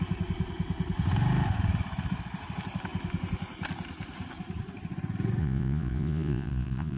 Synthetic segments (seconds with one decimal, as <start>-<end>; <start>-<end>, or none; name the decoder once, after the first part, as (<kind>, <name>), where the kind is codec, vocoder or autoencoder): 5.4-7.0 (vocoder, Vocos)